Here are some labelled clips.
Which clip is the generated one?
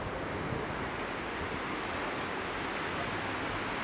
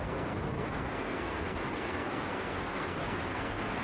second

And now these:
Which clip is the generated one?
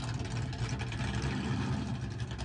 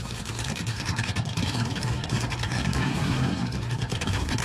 second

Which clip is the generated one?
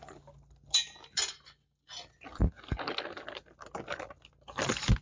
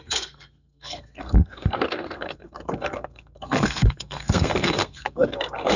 second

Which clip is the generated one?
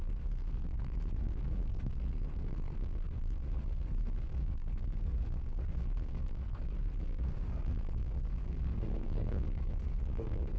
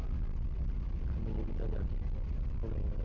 first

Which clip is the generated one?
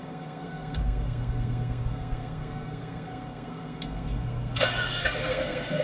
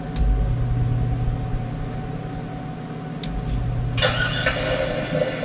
first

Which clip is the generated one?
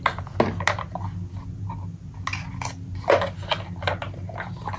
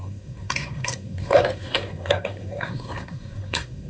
second